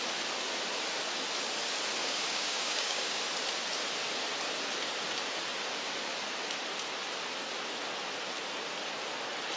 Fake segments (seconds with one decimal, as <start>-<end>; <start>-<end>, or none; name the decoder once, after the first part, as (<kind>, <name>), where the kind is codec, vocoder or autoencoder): 2.0-3.2 (codec, DAC)